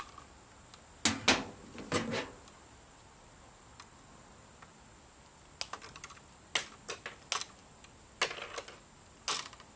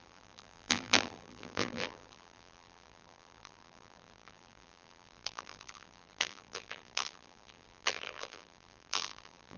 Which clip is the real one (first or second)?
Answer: first